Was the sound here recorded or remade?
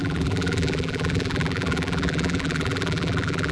remade